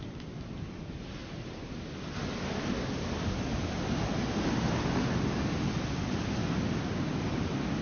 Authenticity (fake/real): real